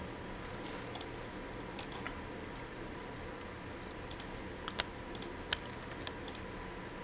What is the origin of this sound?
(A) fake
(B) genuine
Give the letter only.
B